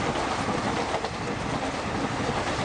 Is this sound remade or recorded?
recorded